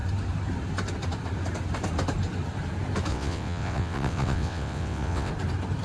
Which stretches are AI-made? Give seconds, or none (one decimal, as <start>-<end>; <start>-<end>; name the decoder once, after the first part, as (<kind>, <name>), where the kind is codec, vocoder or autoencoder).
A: 3.1-5.3 (vocoder, WaveNeXt)